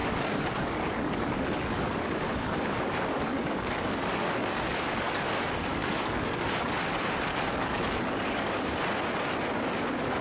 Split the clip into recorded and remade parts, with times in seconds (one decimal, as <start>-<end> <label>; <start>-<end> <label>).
0.0-5.2 remade; 5.2-5.7 recorded; 5.7-6.8 remade; 6.8-7.3 recorded; 7.3-8.8 remade; 8.8-10.2 recorded